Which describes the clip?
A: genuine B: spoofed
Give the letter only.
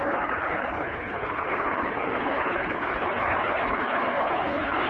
B